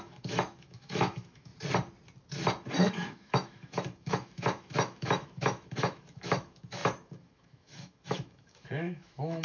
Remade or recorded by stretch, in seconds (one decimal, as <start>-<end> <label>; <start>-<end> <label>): 0.0-1.5 remade; 1.5-2.8 recorded; 2.8-9.4 remade